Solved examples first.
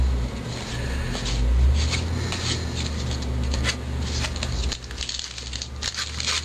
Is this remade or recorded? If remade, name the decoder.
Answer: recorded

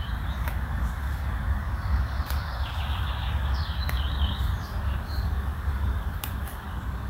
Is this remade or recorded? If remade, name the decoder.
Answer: remade, codec, DAC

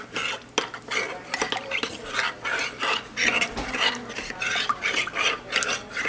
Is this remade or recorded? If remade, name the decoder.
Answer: recorded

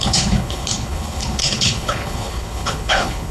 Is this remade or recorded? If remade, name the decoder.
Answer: remade, codec, HILCodec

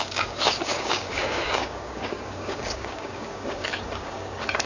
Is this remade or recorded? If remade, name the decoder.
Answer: remade, codec, DAC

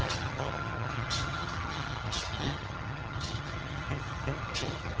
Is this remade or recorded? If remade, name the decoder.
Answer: remade, vocoder, HiFi-GAN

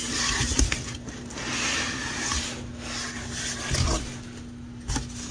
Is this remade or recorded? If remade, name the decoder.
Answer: recorded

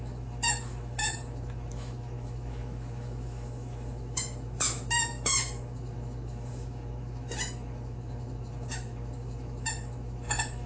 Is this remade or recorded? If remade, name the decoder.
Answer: remade, autoencoder, DAC-VAE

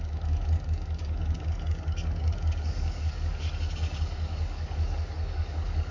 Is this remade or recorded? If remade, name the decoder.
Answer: remade, codec, DAC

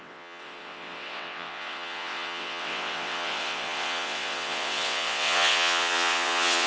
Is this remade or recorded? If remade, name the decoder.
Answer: remade, vocoder, WaveNeXt